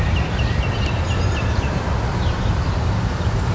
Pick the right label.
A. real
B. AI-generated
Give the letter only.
B